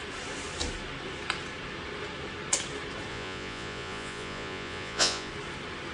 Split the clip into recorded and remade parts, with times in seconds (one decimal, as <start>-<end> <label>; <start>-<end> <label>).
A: 0.0-3.1 recorded; 3.1-5.3 remade; 5.3-5.9 recorded